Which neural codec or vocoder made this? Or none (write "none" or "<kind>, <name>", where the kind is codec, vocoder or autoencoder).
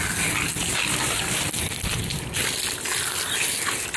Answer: none